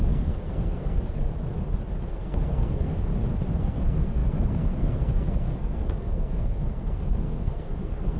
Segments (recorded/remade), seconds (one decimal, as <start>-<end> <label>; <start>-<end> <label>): 0.0-1.3 remade; 1.3-2.1 recorded; 2.1-3.1 remade; 3.1-3.6 recorded; 3.6-8.2 remade